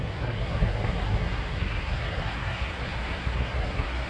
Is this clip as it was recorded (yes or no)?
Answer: no